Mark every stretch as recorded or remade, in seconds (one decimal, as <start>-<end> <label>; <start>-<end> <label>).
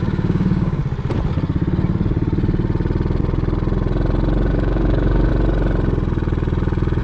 0.0-0.8 remade; 0.8-4.5 recorded; 4.5-5.3 remade; 5.3-7.0 recorded